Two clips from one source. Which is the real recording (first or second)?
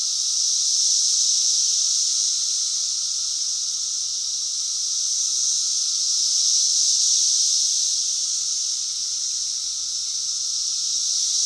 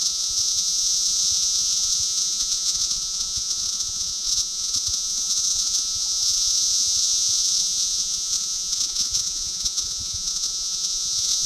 first